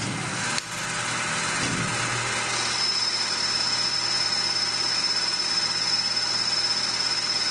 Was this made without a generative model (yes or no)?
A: yes